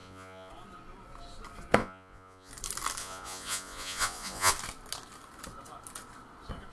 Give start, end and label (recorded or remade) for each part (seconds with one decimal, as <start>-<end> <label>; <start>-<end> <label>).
0.0-0.5 remade; 0.5-1.8 recorded; 1.8-2.5 remade; 2.5-3.0 recorded; 3.0-4.5 remade; 4.5-6.7 recorded